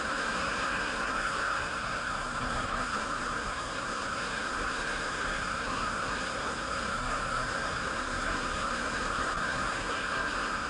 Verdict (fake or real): fake